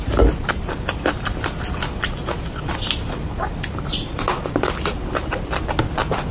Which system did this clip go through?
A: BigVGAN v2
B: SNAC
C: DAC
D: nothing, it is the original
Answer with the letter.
D